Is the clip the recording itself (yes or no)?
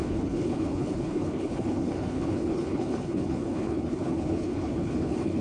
no